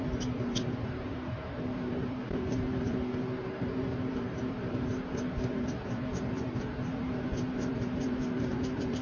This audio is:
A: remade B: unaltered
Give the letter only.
A